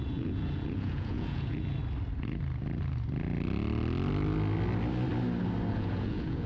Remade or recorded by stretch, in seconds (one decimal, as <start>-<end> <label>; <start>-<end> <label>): 0.0-1.8 remade; 1.8-5.7 recorded; 5.7-6.5 remade